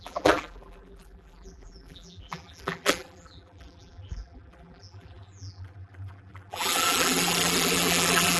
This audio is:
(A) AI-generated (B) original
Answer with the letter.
A